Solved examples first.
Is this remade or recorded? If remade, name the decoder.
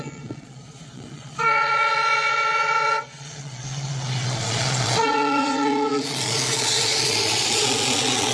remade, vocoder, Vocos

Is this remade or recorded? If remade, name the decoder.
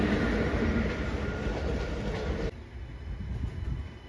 recorded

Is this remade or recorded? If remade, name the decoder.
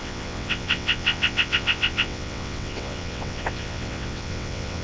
remade, vocoder, WaveNeXt